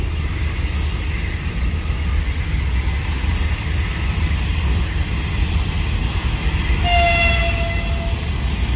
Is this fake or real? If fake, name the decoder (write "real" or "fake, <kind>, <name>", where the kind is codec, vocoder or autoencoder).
real